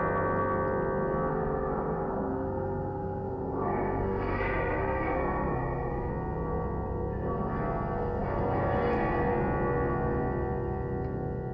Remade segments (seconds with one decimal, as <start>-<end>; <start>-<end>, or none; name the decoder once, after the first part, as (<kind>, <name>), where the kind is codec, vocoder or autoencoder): 1.3-6.1 (codec, SNAC)